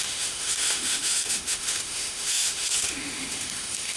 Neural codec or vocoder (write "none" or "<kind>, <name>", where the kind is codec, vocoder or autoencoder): autoencoder, DAC-VAE